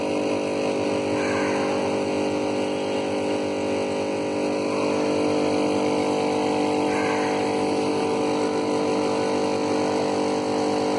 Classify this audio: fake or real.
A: real